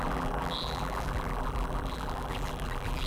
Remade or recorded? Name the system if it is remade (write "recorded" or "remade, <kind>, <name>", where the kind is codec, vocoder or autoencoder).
remade, vocoder, BigVGAN v2